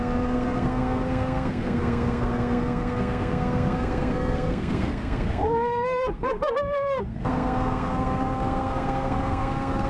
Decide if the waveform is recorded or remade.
remade